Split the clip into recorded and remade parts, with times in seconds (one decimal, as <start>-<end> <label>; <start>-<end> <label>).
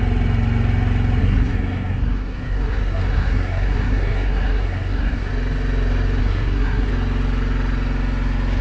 0.0-1.2 recorded; 1.2-5.3 remade; 5.3-6.2 recorded; 6.2-6.9 remade; 6.9-8.6 recorded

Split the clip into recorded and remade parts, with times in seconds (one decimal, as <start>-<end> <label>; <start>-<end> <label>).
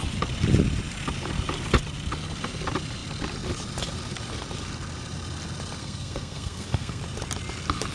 0.0-5.8 recorded; 5.8-7.0 remade; 7.0-7.9 recorded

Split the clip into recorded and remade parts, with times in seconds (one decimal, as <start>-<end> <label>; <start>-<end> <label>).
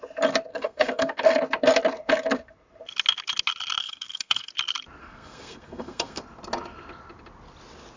0.0-0.5 recorded; 0.5-1.4 remade; 1.4-3.8 recorded; 3.8-4.5 remade; 4.5-5.0 recorded; 5.0-6.2 remade; 6.2-8.0 recorded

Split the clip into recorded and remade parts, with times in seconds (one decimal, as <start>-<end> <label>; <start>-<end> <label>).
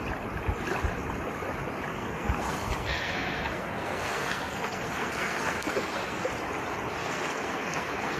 0.0-1.9 recorded; 1.9-6.3 remade; 6.3-7.0 recorded; 7.0-8.2 remade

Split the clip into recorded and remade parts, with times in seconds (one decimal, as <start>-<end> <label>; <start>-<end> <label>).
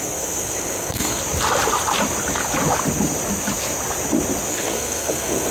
0.0-1.2 remade; 1.2-4.5 recorded; 4.5-5.5 remade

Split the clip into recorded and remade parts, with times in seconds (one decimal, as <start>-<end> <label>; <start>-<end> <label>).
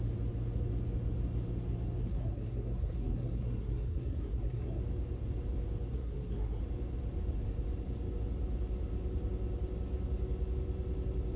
0.0-2.0 recorded; 2.0-4.8 remade; 4.8-5.9 recorded; 5.9-6.6 remade; 6.6-11.4 recorded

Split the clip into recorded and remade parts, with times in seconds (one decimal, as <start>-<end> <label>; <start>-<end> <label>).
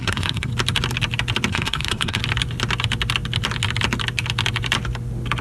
0.0-0.5 remade; 0.5-1.5 recorded; 1.5-2.2 remade; 2.2-5.4 recorded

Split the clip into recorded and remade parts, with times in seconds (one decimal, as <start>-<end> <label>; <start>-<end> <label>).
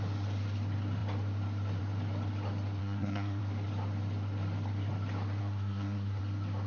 0.0-2.8 recorded; 2.8-3.4 remade; 3.4-5.4 recorded; 5.4-6.2 remade; 6.2-6.7 recorded